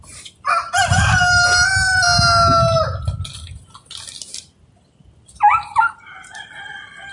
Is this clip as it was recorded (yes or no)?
yes